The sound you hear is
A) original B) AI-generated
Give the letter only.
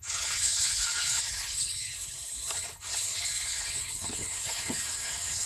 B